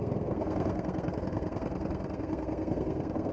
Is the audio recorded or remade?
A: remade